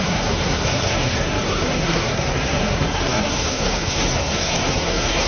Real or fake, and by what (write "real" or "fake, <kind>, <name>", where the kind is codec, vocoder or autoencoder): fake, codec, SNAC